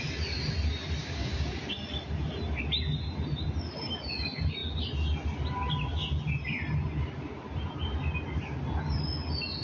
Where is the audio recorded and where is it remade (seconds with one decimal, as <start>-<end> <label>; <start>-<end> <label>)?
0.0-1.0 recorded; 1.0-1.6 remade; 1.6-9.6 recorded